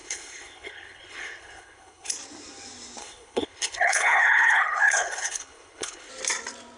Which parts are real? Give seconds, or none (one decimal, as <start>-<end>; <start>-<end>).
2.1-3.0; 6.1-6.8